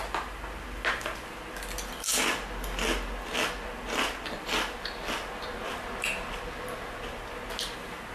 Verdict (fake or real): real